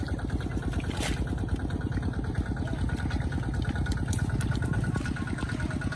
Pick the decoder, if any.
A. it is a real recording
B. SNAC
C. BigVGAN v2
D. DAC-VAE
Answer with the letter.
A